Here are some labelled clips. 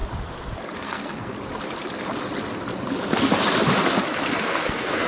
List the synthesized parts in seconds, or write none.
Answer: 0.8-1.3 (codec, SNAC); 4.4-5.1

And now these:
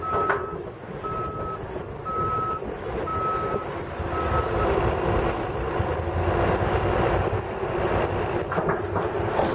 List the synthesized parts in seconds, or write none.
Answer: none

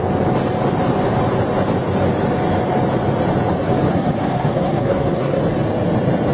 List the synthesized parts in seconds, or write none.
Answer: 3.9-5.4 (codec, SNAC)

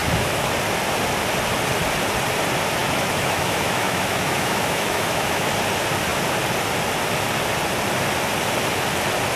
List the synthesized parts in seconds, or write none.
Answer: 0.0-0.5 (autoencoder, DAC-VAE); 2.8-5.5

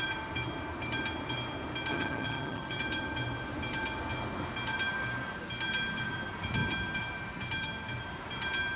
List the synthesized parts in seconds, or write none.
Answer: 1.9-2.8 (vocoder, HiFi-GAN)

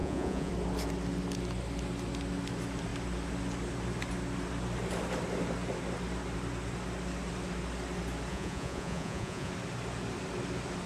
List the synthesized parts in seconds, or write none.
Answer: 0.0-0.5 (vocoder, Vocos); 8.3-9.5

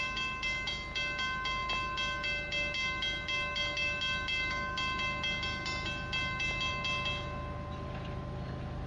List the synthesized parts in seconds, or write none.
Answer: none

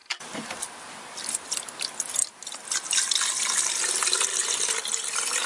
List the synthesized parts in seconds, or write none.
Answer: none